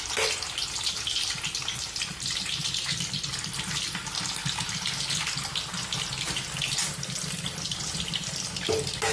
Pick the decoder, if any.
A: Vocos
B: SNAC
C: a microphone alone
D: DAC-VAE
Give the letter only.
C